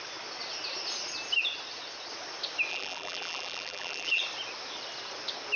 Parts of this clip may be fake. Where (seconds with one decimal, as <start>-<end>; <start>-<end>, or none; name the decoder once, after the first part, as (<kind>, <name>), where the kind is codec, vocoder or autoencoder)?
2.7-4.2 (vocoder, BigVGAN v2)